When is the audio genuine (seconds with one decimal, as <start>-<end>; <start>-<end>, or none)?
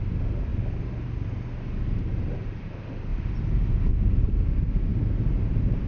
0.5-1.9